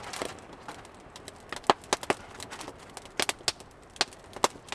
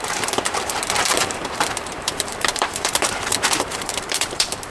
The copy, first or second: second